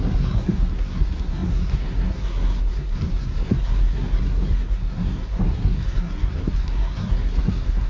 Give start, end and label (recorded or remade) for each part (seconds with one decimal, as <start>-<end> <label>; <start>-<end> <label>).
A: 0.0-7.9 remade